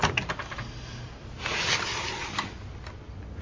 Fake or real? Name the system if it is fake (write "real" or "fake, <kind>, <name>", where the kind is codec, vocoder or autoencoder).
real